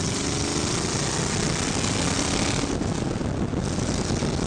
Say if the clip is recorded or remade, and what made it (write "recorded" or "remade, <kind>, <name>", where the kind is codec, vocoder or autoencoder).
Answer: recorded